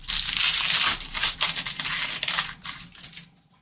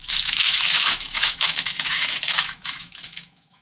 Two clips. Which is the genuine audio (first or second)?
first